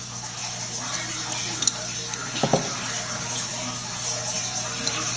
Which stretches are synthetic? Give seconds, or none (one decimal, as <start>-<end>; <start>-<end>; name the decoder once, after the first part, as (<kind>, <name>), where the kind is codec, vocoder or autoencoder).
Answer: none